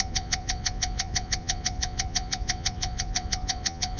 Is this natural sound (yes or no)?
no